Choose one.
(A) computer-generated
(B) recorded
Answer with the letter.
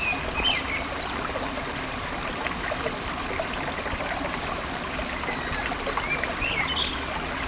B